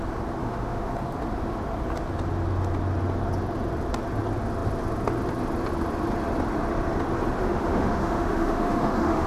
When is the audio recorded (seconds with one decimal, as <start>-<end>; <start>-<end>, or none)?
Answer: 0.0-0.4; 0.9-7.4